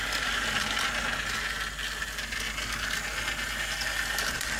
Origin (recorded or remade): recorded